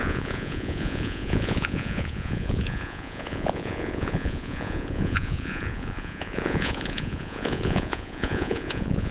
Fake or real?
fake